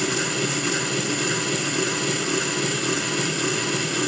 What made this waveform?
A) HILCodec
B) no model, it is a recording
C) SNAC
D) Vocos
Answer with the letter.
B